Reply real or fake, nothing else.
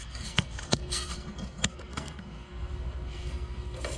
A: fake